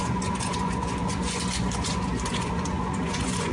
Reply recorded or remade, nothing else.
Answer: remade